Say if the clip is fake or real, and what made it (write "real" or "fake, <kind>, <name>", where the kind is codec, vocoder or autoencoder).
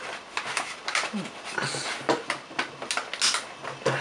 real